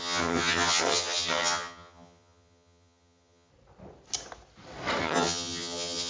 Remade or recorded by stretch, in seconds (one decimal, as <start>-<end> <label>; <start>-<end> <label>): 0.0-3.5 remade; 3.5-5.0 recorded; 5.0-6.1 remade